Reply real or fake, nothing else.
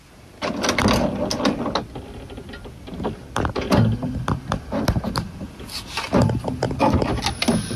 real